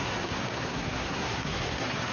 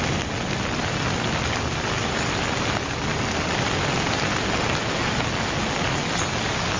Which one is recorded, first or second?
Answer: second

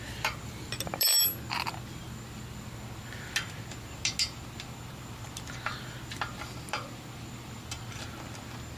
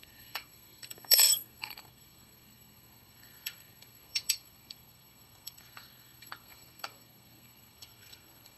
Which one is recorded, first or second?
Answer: first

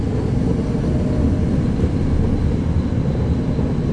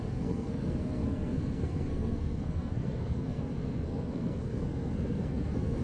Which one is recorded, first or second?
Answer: first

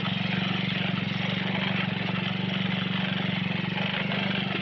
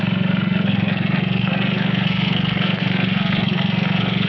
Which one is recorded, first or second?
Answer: first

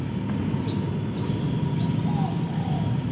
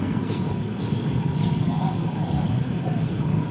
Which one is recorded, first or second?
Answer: first